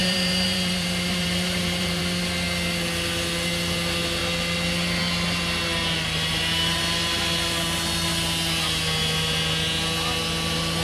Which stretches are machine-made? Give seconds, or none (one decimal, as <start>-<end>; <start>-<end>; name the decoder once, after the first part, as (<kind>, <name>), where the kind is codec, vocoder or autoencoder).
0.0-2.0 (vocoder, BigVGAN v2)